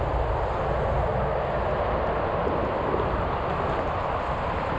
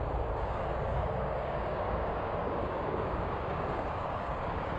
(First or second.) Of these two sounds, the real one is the first